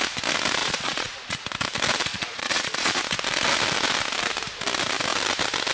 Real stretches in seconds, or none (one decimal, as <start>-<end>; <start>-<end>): 0.0-0.6; 1.4-2.1; 3.0-5.7